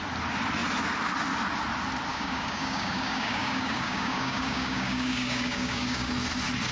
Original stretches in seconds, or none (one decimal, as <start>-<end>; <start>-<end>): 0.0-2.1; 6.1-6.7